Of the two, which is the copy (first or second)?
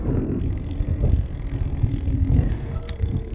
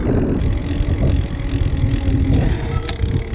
first